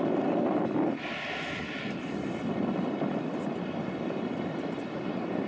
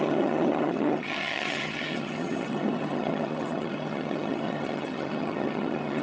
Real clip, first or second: first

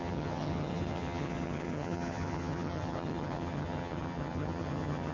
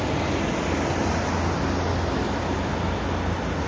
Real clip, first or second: second